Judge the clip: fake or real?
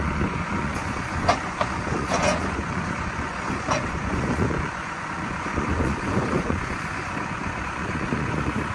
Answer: fake